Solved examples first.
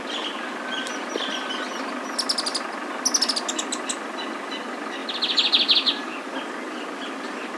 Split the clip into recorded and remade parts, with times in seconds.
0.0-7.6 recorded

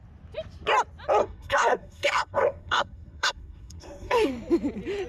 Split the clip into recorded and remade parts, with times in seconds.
0.0-1.2 recorded; 1.2-4.3 remade; 4.3-5.1 recorded

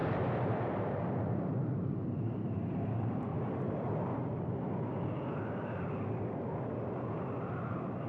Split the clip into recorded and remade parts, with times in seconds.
0.0-4.5 remade; 4.5-8.1 recorded

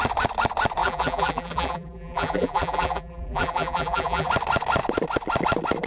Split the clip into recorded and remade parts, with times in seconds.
0.0-0.8 recorded; 0.8-4.3 remade; 4.3-5.9 recorded

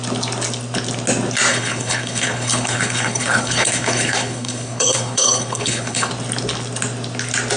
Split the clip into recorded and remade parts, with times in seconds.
0.0-1.5 recorded; 1.5-6.1 remade; 6.1-7.6 recorded

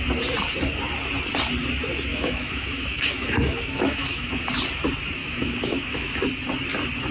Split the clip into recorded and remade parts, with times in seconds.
0.0-2.1 recorded; 2.1-4.4 remade; 4.4-5.2 recorded; 5.2-6.2 remade; 6.2-7.1 recorded